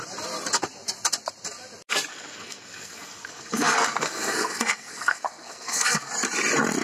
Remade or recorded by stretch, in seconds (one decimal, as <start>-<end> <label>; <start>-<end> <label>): 0.0-2.1 recorded; 2.1-6.1 remade; 6.1-6.8 recorded